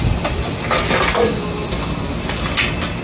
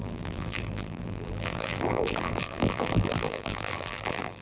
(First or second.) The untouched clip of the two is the first